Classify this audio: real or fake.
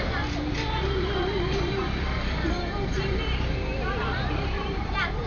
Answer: fake